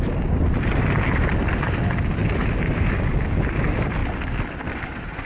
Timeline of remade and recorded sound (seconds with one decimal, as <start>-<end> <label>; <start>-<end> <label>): 0.0-5.3 recorded